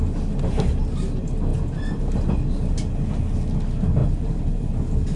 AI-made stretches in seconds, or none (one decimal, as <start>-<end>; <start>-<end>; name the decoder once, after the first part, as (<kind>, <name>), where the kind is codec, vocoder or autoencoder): 4.0-4.7 (vocoder, BigVGAN v2)